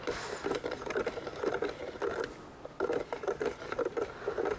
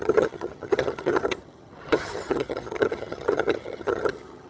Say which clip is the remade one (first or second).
second